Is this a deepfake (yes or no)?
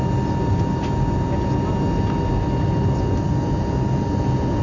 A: no